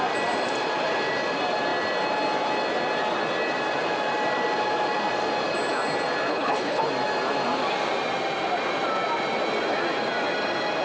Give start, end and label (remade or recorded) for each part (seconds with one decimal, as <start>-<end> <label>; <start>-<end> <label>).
0.0-6.3 recorded; 6.3-6.8 remade; 6.8-10.8 recorded